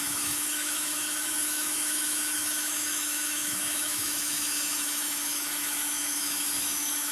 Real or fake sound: fake